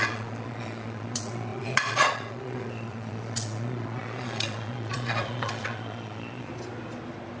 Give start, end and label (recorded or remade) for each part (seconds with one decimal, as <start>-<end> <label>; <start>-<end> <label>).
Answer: 0.0-6.5 remade; 6.5-7.4 recorded